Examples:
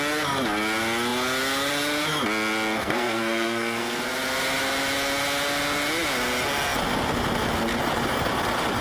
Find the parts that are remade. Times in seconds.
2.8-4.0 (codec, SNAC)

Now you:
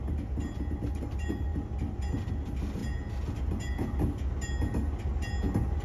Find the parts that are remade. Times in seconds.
none

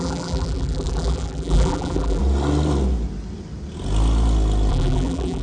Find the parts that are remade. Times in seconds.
0.0-2.2 (vocoder, BigVGAN v2); 4.7-5.4

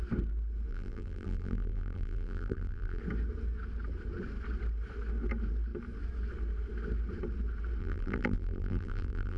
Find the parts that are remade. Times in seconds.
0.7-3.0 (vocoder, BigVGAN v2); 7.8-9.4

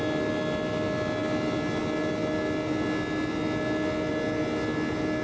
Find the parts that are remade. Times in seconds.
none

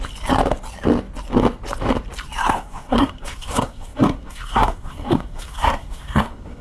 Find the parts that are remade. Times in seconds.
2.4-6.6 (codec, SNAC)

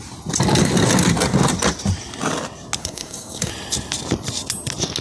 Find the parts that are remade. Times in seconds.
2.8-3.5 (codec, SNAC)